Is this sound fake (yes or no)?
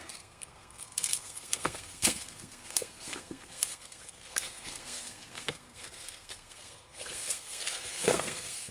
yes